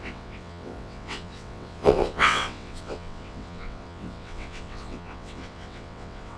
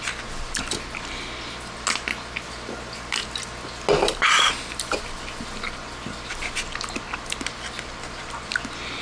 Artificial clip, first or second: first